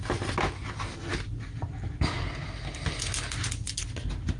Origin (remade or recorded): recorded